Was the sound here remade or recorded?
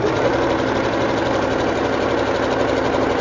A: recorded